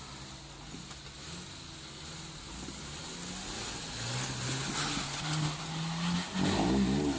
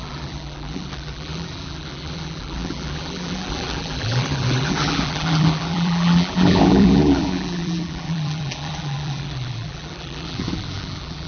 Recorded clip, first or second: first